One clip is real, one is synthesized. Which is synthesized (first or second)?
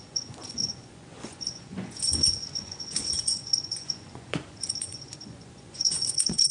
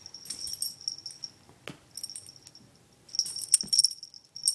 first